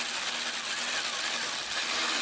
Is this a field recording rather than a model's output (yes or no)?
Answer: yes